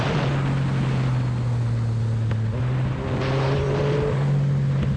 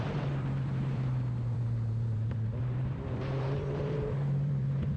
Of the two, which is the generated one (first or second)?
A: second